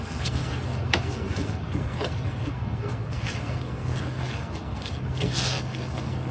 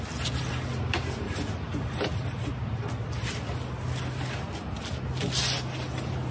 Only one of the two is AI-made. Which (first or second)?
first